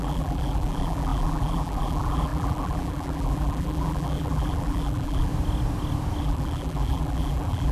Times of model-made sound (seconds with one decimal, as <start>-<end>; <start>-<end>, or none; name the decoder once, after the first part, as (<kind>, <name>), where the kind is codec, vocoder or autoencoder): 0.0-5.3 (vocoder, BigVGAN v2); 6.2-7.7